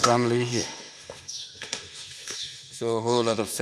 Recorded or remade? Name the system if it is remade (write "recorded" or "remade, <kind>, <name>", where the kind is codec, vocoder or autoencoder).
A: remade, autoencoder, DAC-VAE